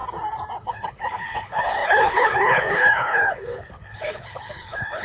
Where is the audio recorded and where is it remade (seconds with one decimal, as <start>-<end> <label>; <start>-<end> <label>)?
0.0-0.6 recorded; 0.6-5.0 remade